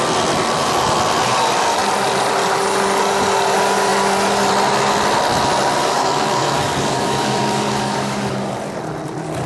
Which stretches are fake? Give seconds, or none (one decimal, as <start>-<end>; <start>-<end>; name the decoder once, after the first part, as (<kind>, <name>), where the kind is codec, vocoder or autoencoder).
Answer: 5.8-8.5 (codec, DAC)